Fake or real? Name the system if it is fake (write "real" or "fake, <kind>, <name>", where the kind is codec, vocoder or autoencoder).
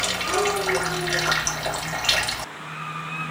real